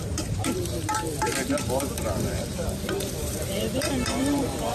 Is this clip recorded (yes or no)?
no